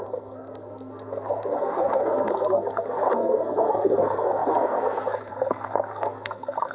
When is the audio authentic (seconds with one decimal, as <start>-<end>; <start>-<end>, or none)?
none